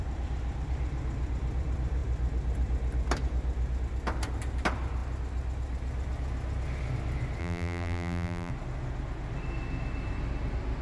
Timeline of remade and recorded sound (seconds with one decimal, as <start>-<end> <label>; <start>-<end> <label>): 0.0-7.4 recorded; 7.4-8.5 remade; 8.5-10.8 recorded